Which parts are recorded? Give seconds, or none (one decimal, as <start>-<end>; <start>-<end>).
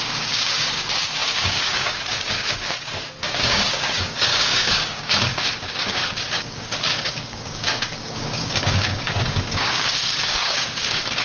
none